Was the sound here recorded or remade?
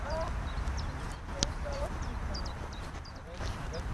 remade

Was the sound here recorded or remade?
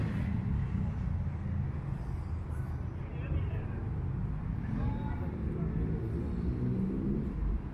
recorded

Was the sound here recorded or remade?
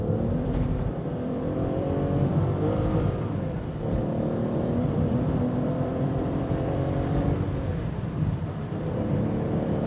remade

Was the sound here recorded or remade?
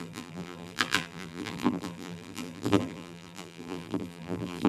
remade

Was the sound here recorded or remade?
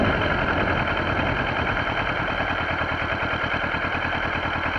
recorded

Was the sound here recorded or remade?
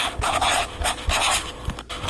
recorded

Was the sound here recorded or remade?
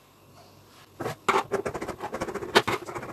recorded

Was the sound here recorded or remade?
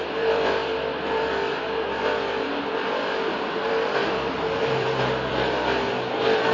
remade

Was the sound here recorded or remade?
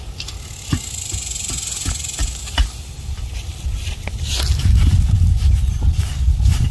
recorded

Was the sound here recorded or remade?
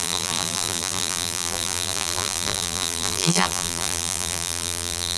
remade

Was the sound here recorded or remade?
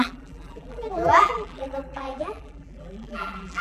remade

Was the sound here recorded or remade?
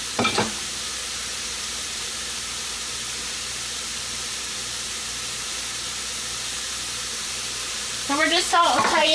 remade